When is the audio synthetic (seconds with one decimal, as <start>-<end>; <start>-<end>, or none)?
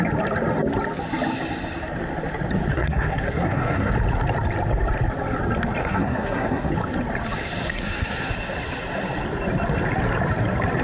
2.7-3.9; 5.8-6.7; 7.7-8.3